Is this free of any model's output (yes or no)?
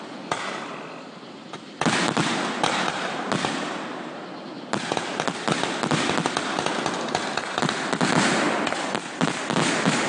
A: yes